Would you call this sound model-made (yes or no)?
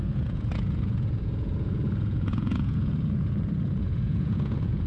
yes